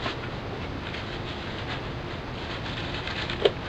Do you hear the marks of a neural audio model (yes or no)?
no